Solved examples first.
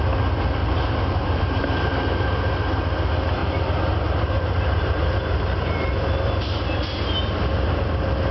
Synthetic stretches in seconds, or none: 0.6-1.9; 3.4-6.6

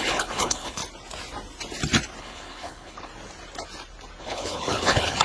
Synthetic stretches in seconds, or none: 0.0-0.8; 2.2-3.1; 4.2-5.2

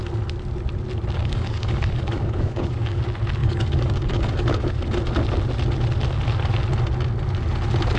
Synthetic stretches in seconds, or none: 1.2-3.0; 3.4-4.7

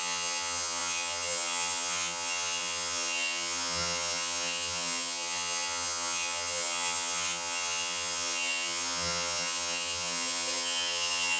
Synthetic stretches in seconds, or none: 0.0-11.4

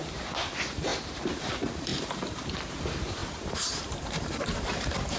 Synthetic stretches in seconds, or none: 0.0-0.9; 1.4-5.2

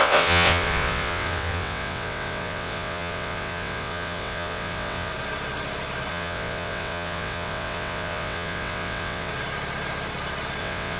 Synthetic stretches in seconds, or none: 0.0-5.1; 6.1-9.3; 10.6-11.0